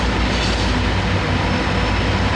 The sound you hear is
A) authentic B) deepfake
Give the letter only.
A